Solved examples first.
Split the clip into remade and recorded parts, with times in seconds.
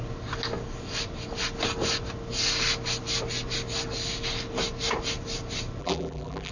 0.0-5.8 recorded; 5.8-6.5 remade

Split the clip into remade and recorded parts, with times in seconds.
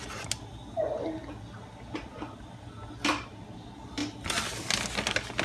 0.0-5.4 recorded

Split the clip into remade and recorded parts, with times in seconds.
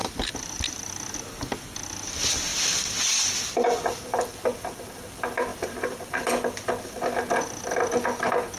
0.0-0.8 remade; 0.8-5.5 recorded; 5.5-6.7 remade; 6.7-8.6 recorded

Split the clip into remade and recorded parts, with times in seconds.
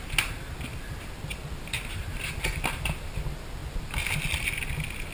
0.0-5.1 recorded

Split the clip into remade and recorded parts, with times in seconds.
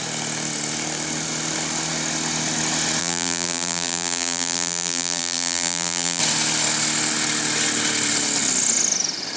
0.0-3.0 recorded; 3.0-6.2 remade; 6.2-9.4 recorded